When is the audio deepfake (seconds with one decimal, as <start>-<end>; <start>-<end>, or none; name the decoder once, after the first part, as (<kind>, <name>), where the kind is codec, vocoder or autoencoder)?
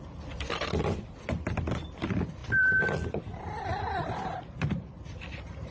0.0-5.7 (vocoder, BigVGAN v2)